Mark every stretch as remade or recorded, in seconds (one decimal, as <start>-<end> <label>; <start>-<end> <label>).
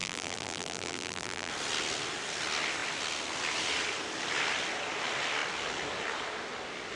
0.0-1.5 remade; 1.5-7.0 recorded